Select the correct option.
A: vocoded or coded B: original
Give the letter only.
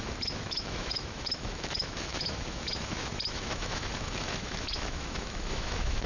A